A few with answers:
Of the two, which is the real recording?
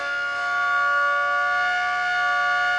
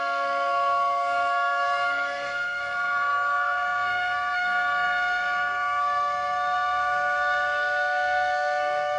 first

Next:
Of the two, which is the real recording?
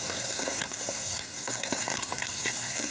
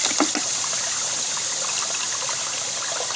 second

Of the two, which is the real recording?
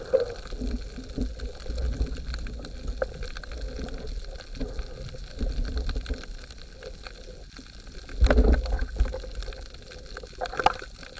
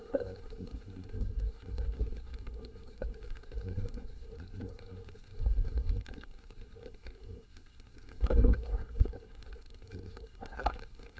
first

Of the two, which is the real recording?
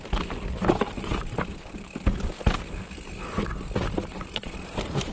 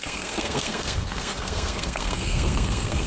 first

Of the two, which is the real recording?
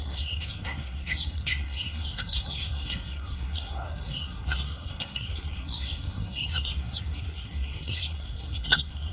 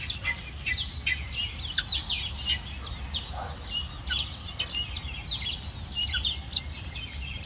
second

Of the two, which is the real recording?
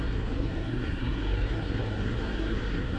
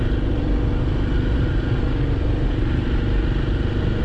second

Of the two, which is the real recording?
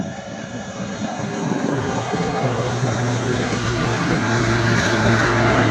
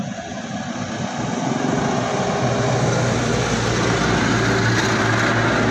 second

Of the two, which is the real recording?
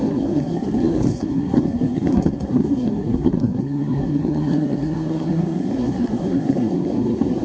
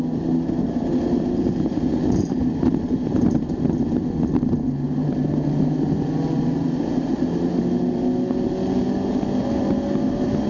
second